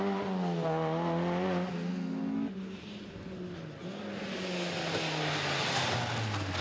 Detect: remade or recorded recorded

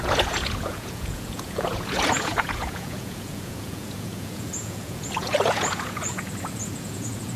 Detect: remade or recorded remade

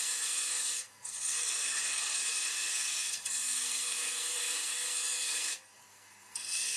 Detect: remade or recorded remade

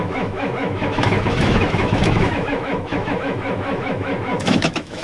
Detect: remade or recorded remade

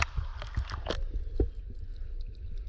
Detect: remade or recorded recorded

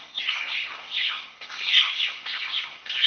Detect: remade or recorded remade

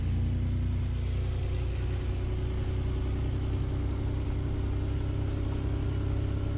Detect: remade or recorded recorded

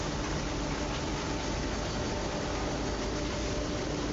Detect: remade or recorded recorded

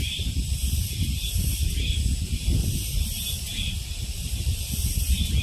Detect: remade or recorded remade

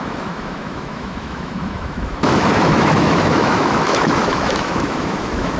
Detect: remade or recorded remade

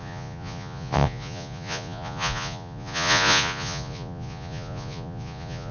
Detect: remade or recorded remade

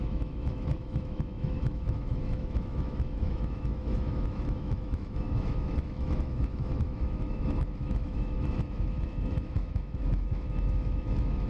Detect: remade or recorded remade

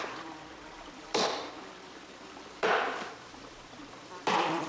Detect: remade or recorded remade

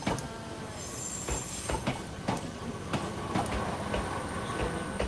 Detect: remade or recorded recorded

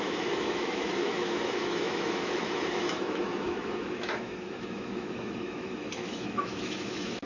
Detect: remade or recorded remade